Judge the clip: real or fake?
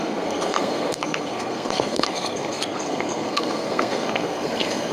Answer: fake